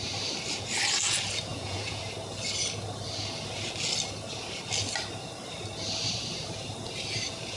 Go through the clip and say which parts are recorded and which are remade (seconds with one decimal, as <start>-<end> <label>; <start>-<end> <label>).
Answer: 0.0-1.5 recorded; 1.5-2.0 remade; 2.0-7.6 recorded